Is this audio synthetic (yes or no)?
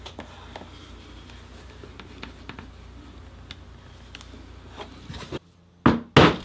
no